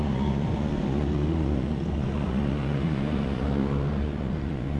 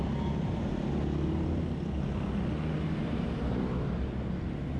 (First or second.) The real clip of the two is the second